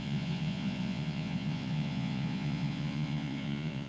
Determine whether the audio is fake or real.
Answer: fake